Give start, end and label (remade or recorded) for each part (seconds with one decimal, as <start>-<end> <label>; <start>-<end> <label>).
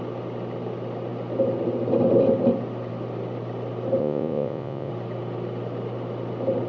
0.0-4.0 recorded; 4.0-4.9 remade; 4.9-6.7 recorded